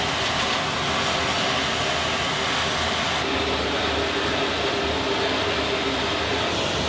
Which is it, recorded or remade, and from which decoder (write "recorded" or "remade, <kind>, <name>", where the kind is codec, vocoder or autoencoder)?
recorded